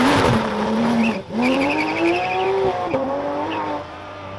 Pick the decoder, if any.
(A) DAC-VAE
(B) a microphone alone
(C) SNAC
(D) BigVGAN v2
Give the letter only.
D